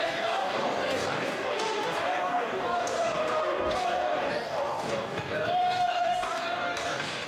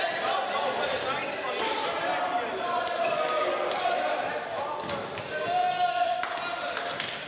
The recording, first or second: second